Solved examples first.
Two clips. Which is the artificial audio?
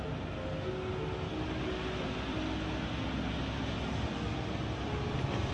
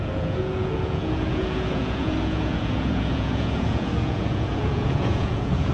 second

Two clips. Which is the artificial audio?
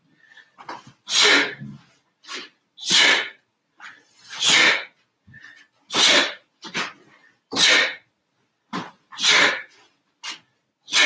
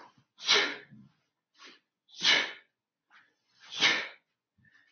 second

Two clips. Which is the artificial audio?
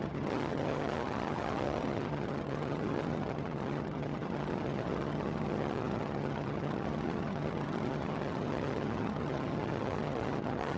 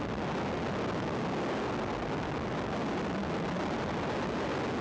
first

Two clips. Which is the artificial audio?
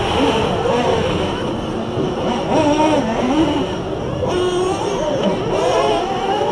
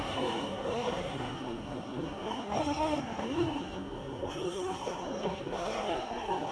second